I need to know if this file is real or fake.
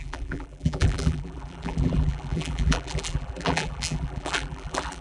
fake